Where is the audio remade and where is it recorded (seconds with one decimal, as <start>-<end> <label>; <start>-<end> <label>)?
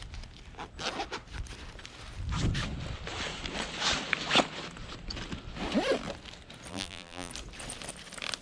0.0-6.7 recorded; 6.7-7.3 remade; 7.3-8.4 recorded